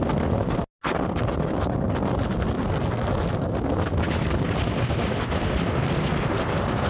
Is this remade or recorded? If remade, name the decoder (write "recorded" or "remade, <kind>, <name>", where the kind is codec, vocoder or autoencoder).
recorded